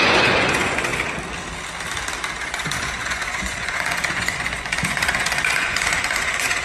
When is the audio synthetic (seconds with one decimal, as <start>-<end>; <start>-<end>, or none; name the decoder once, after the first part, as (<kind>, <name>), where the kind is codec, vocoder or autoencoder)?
0.0-0.9 (vocoder, Vocos); 2.4-6.6